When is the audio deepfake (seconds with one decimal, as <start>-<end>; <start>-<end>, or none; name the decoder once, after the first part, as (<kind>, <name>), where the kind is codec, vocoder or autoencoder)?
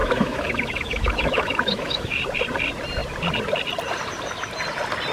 0.0-2.2 (autoencoder, DAC-VAE)